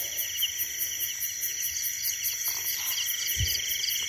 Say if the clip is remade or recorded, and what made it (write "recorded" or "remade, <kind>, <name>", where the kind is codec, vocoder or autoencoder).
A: recorded